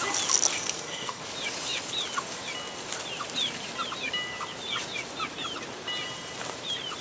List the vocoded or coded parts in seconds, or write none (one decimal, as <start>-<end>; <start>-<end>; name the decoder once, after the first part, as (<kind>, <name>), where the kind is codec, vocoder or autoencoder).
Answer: 0.5-1.2 (codec, SNAC)